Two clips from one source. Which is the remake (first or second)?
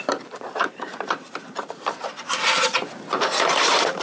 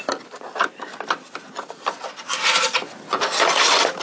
first